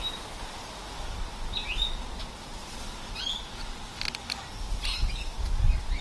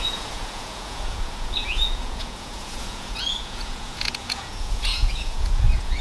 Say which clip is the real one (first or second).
first